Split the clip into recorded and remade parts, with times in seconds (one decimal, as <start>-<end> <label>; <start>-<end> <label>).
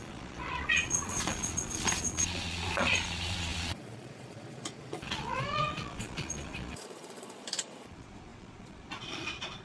0.0-9.6 remade